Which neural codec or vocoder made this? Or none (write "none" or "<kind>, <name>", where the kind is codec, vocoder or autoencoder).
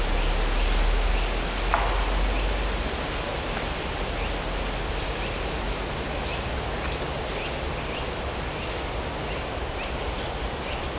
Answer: none